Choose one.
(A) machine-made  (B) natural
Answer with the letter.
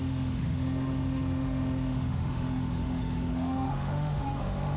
A